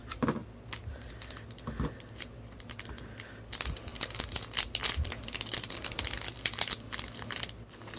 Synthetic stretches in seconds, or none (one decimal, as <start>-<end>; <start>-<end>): none